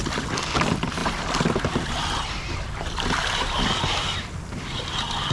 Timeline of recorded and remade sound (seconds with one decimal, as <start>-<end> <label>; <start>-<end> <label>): 0.0-5.3 recorded